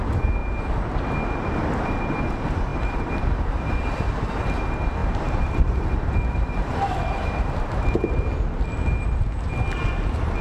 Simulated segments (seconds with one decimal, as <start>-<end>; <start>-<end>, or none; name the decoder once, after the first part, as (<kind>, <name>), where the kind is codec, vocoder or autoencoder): 2.7-4.3 (vocoder, BigVGAN v2); 5.0-8.1